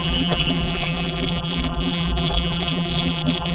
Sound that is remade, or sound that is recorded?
remade